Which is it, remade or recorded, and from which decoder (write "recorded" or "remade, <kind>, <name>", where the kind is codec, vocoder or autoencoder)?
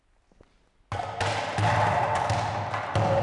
recorded